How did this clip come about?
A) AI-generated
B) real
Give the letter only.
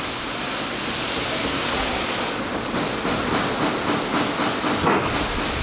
B